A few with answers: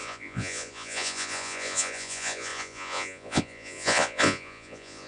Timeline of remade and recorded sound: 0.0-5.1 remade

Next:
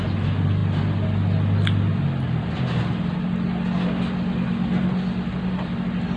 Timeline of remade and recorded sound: 0.0-6.2 recorded

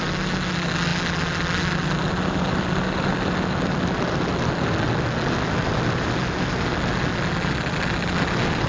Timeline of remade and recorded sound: 0.0-8.7 recorded

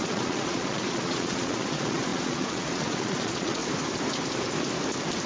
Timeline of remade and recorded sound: 0.0-3.6 remade; 3.6-5.3 recorded

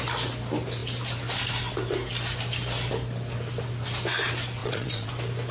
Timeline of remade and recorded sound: 0.0-4.6 recorded; 4.6-5.1 remade; 5.1-5.5 recorded

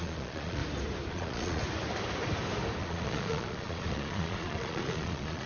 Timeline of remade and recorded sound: 0.0-0.6 remade; 0.6-1.1 recorded; 1.1-1.6 remade; 1.6-2.8 recorded; 2.8-5.5 remade